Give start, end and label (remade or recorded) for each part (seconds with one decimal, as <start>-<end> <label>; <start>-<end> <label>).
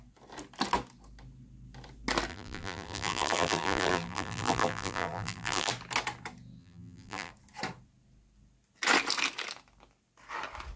0.0-2.3 recorded; 2.3-5.7 remade; 5.7-6.6 recorded; 6.6-7.3 remade; 7.3-10.8 recorded